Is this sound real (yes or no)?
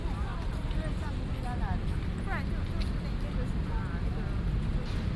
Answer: yes